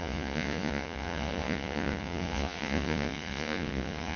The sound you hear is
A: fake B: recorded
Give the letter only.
A